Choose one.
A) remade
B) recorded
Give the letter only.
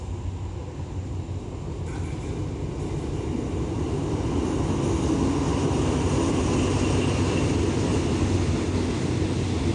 B